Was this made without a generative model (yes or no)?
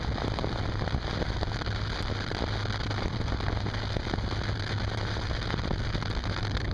yes